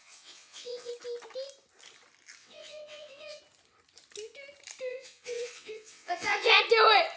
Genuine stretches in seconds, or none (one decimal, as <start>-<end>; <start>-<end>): 0.9-2.4; 3.4-4.9; 6.6-7.2